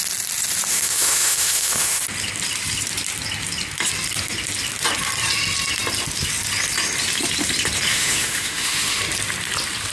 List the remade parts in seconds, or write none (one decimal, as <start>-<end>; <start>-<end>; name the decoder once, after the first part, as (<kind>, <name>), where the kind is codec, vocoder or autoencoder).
0.7-2.0 (autoencoder, DAC-VAE); 7.9-9.0